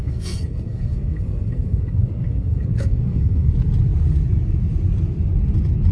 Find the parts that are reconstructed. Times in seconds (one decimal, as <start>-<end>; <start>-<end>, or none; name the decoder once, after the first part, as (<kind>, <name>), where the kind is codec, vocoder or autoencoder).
0.0-3.5 (codec, SNAC)